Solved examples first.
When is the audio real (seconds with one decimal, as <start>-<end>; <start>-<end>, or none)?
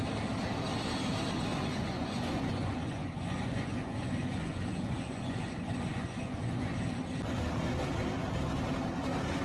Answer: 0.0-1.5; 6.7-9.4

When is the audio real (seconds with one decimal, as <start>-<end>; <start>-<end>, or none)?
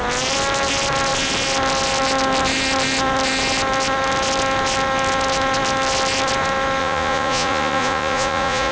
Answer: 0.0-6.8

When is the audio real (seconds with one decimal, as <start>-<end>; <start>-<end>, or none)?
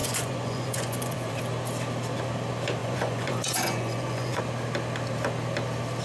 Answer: 1.3-2.8; 4.4-6.0